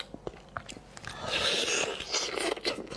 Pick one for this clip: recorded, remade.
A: recorded